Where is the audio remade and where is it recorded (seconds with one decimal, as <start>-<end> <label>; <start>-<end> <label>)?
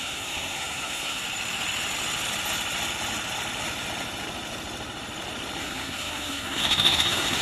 0.0-1.2 remade; 1.2-5.6 recorded; 5.6-7.4 remade